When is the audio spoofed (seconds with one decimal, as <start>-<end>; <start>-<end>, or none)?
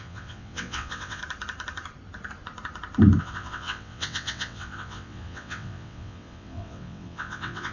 0.0-1.2; 3.2-7.7